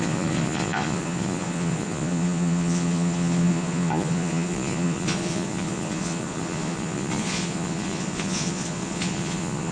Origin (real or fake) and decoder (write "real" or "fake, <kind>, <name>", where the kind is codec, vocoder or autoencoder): fake, vocoder, Vocos